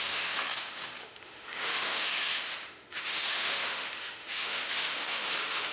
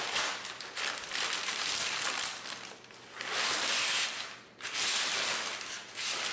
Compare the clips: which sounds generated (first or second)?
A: first